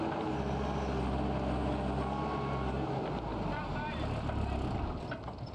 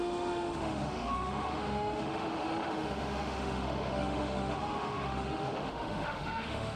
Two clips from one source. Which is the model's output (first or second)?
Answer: second